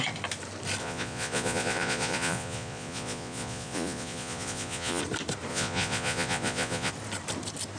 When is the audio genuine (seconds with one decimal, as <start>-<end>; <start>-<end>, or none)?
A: 0.0-0.8; 5.0-5.5; 6.9-7.8